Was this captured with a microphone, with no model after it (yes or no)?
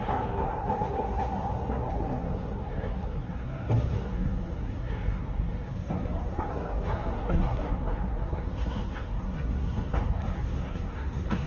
no